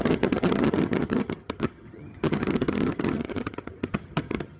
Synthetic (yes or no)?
yes